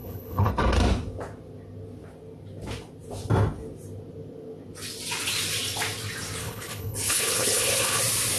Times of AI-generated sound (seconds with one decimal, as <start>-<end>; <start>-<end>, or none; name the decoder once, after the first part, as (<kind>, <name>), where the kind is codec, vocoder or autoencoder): 0.0-0.5 (codec, HILCodec); 6.4-8.0